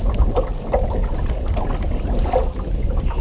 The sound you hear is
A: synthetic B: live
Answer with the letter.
B